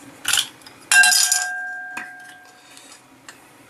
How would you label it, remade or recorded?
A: recorded